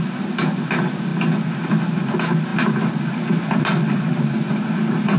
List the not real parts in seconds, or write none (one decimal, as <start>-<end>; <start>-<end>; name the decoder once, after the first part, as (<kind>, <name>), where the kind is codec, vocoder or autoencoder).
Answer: none